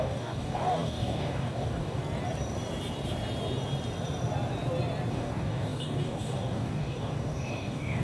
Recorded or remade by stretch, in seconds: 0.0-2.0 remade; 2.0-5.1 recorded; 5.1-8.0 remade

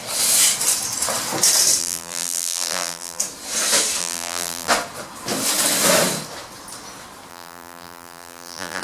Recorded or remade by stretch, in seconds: 0.0-1.8 recorded; 1.8-3.2 remade; 3.2-4.0 recorded; 4.0-4.7 remade; 4.7-7.3 recorded; 7.3-8.8 remade

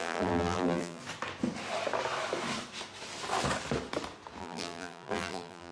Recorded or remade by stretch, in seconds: 0.0-1.0 remade; 1.0-4.4 recorded; 4.4-5.7 remade

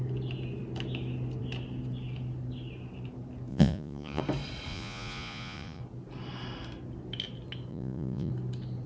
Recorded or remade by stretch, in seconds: 0.0-3.5 recorded; 3.5-4.2 remade; 4.2-4.7 recorded; 4.7-5.8 remade; 5.8-7.7 recorded; 7.7-8.3 remade; 8.3-8.9 recorded